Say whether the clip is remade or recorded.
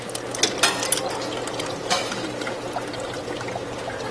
recorded